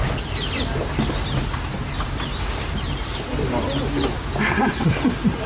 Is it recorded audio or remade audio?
recorded